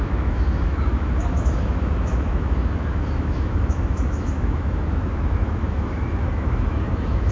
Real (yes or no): no